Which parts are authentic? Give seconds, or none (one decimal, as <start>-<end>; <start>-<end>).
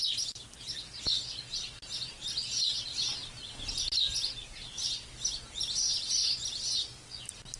0.0-7.6